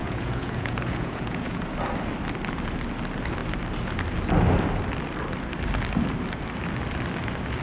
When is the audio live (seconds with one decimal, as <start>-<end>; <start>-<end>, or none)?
1.6-7.6